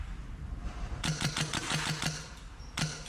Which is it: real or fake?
fake